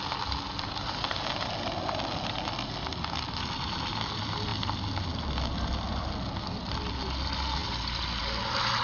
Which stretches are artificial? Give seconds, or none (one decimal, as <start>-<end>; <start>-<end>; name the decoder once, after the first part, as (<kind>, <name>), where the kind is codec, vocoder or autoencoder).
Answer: none